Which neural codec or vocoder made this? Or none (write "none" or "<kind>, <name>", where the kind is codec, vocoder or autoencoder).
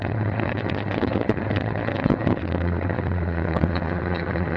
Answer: vocoder, WaveNeXt